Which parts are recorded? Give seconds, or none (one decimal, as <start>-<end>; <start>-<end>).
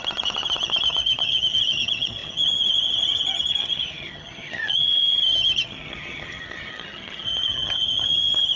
none